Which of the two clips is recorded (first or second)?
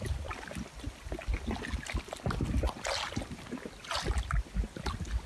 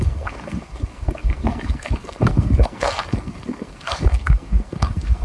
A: first